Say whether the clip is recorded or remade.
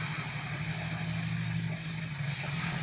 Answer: recorded